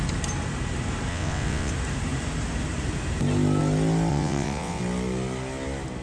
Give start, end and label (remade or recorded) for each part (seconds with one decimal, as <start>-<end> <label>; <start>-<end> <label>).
0.0-1.1 recorded; 1.1-1.7 remade; 1.7-4.1 recorded; 4.1-4.8 remade; 4.8-6.0 recorded